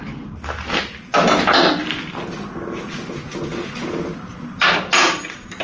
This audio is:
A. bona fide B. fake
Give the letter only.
A